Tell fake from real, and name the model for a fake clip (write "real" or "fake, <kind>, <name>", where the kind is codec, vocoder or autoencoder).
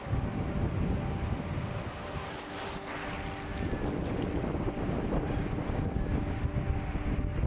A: real